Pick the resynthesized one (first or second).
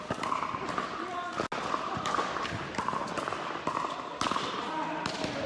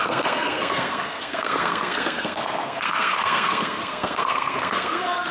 second